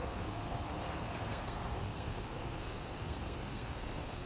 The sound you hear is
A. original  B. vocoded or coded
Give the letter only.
B